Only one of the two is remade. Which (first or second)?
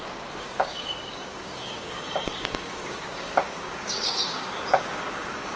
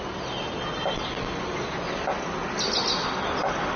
first